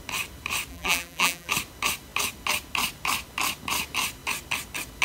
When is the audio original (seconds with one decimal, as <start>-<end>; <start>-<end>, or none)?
0.0-0.7; 1.5-5.0